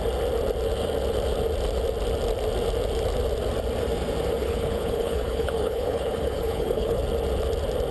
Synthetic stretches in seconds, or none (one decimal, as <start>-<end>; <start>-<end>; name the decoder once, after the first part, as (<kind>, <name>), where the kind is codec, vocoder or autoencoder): 4.4-7.0 (codec, HILCodec)